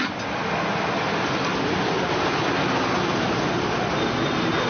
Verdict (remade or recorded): recorded